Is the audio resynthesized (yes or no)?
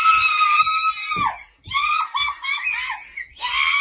no